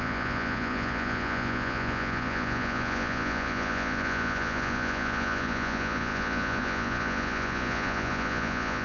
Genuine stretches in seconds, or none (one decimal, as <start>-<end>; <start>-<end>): none